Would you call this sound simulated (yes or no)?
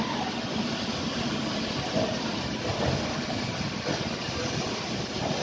no